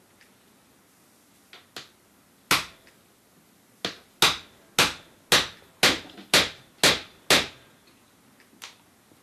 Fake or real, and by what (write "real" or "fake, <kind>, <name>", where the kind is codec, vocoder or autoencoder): real